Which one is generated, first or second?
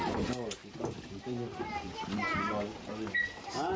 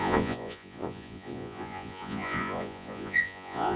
second